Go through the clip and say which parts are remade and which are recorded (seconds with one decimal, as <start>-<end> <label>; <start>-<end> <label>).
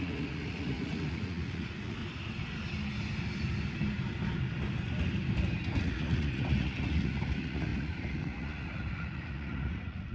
0.0-2.0 remade; 2.0-5.8 recorded; 5.8-10.1 remade